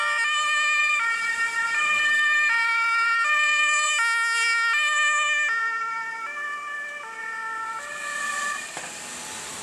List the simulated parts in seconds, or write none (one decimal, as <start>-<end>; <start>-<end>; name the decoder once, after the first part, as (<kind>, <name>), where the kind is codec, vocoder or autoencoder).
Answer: 0.8-3.9 (vocoder, BigVGAN v2); 7.9-9.0

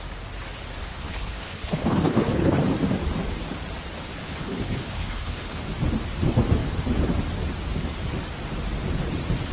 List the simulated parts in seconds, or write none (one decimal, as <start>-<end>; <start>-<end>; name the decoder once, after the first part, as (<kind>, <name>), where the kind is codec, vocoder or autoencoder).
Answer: 0.9-2.6 (codec, HILCodec); 4.2-5.6

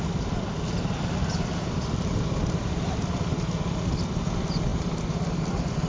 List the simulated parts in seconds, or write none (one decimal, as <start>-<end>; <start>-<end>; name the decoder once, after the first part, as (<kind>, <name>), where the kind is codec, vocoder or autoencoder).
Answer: 1.2-4.2 (vocoder, BigVGAN v2)